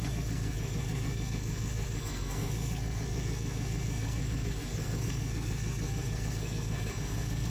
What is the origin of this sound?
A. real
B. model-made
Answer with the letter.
B